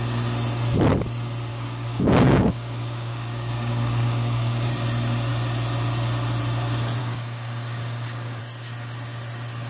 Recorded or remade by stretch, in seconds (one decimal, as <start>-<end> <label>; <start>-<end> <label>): 0.0-1.5 recorded; 1.5-4.7 remade; 4.7-7.0 recorded; 7.0-8.4 remade; 8.4-9.7 recorded